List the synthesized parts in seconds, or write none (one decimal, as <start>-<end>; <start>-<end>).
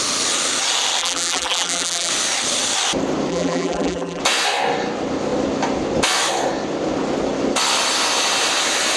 1.0-2.1; 3.3-4.2